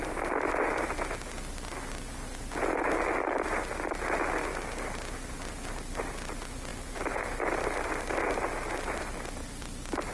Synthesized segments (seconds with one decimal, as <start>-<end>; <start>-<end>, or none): none